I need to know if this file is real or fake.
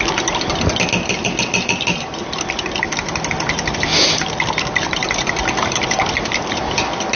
real